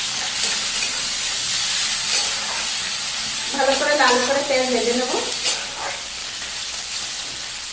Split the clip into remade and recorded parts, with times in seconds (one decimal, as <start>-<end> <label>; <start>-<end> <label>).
0.0-7.7 recorded